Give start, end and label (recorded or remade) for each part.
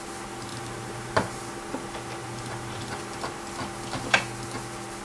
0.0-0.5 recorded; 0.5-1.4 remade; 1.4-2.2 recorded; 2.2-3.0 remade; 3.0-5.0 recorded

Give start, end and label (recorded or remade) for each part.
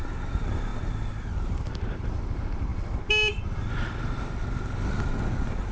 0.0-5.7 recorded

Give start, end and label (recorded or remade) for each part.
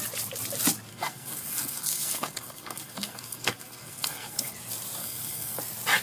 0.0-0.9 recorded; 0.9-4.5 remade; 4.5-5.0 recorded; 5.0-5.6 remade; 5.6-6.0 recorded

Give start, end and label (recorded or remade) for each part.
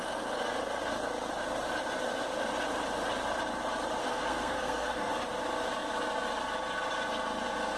0.0-4.0 recorded; 4.0-5.1 remade; 5.1-7.8 recorded